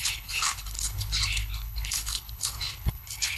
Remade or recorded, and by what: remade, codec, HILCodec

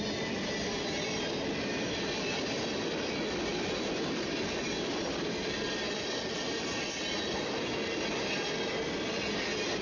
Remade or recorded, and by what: recorded